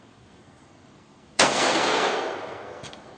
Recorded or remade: remade